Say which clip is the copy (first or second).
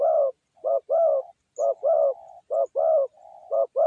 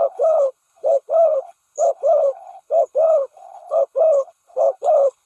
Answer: second